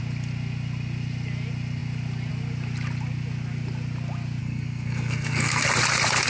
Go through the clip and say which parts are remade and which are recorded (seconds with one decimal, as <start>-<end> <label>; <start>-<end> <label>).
0.0-4.4 recorded; 4.4-5.6 remade; 5.6-6.3 recorded